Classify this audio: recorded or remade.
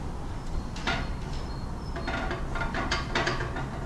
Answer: recorded